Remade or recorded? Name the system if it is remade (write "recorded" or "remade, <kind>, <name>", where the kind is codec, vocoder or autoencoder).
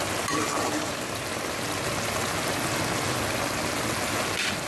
recorded